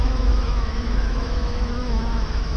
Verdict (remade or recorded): remade